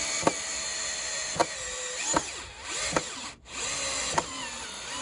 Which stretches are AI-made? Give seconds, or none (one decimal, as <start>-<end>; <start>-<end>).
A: none